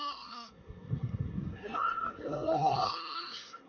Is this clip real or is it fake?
fake